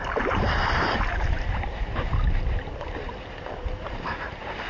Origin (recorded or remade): remade